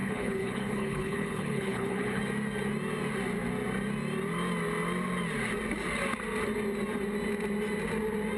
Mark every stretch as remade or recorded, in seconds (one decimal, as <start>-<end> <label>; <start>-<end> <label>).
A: 0.0-2.2 remade; 2.2-8.4 recorded